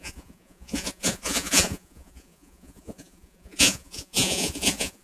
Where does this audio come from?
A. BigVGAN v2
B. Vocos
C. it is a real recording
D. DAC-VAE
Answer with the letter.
B